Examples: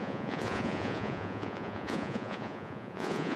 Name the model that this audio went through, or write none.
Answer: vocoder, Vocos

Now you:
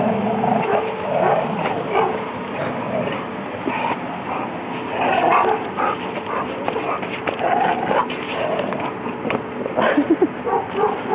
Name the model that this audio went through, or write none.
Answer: none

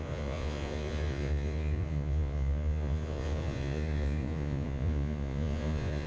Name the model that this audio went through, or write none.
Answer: vocoder, Vocos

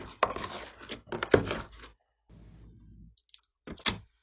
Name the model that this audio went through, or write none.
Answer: none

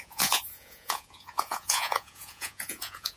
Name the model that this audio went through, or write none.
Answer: vocoder, Vocos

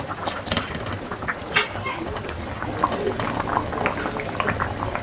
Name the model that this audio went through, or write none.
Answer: none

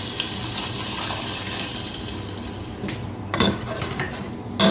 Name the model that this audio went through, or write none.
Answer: none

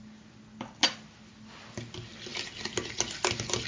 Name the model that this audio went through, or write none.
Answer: none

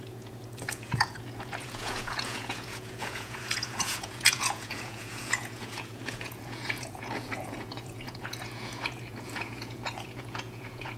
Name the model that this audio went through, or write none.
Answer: vocoder, Vocos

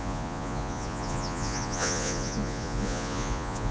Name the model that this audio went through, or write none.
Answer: vocoder, Vocos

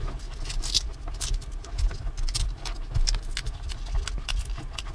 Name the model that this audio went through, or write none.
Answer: none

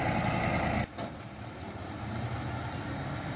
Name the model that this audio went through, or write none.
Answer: none